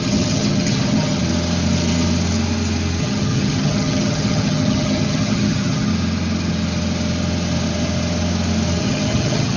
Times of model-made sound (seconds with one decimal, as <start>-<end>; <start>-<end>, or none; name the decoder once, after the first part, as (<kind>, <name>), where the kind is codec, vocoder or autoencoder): 0.0-1.2 (vocoder, HiFi-GAN); 3.0-5.9; 8.8-9.6